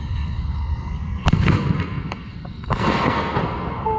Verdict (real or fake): fake